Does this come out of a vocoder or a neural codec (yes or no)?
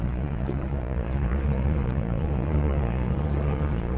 yes